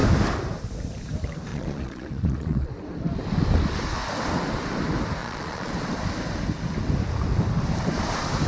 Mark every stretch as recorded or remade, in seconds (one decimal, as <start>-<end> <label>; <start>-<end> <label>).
0.0-1.5 recorded; 1.5-2.7 remade; 2.7-5.2 recorded; 5.2-5.7 remade; 5.7-8.5 recorded